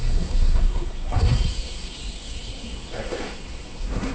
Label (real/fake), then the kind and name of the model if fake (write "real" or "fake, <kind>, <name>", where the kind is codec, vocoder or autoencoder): fake, codec, SNAC